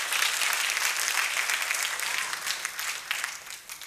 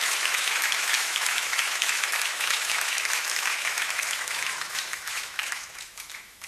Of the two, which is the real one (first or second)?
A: first